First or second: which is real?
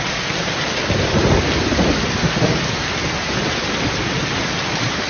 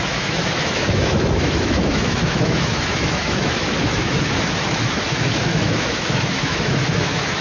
first